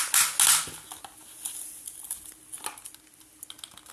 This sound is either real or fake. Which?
real